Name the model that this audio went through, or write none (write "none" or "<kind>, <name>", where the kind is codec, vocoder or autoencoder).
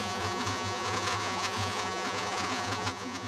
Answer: vocoder, Vocos